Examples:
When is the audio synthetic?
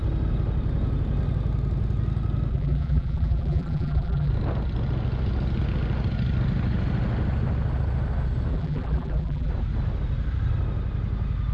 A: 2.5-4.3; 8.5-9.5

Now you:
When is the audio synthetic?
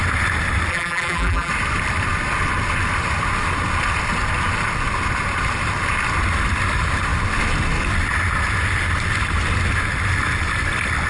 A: 0.7-1.5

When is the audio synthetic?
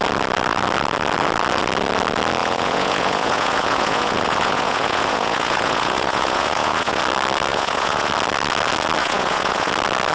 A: 2.4-7.0; 7.5-8.1; 9.0-9.7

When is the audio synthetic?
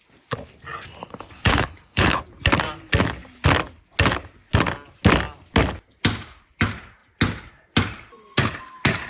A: 1.0-2.2